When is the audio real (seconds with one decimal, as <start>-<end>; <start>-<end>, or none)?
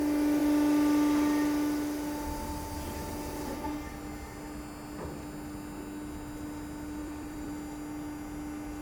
0.0-7.0; 7.5-8.8